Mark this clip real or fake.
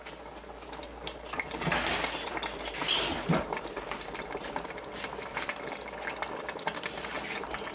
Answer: real